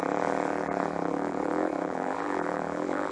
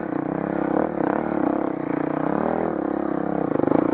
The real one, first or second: second